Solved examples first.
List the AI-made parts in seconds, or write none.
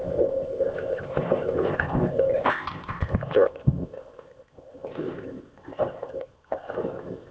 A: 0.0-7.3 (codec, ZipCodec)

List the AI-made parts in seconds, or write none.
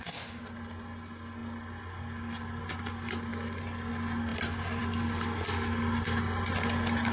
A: none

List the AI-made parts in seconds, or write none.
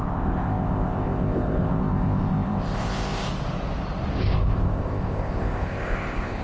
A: 0.0-3.3 (codec, ZipCodec); 4.2-6.4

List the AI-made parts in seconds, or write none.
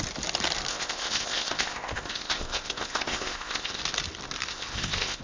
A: 0.7-3.8 (codec, ZipCodec); 4.5-5.2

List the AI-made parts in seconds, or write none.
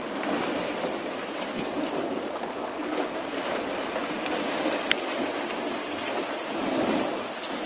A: none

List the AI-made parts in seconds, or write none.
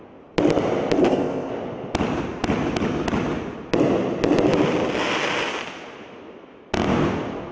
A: 1.0-1.5 (codec, ZipCodec)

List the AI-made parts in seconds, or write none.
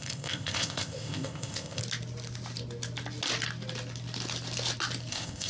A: 0.0-1.8 (codec, ZipCodec); 5.1-5.5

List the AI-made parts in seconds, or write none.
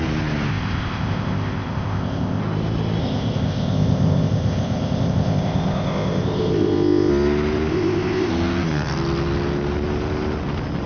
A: 0.5-2.4 (codec, ZipCodec); 3.0-7.1; 7.7-8.3